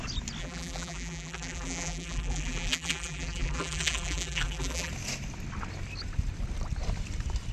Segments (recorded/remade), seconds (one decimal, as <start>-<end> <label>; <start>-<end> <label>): 0.0-0.4 recorded; 0.4-4.9 remade; 4.9-7.5 recorded